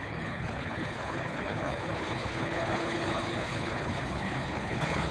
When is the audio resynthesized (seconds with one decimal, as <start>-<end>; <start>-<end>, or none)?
0.0-5.1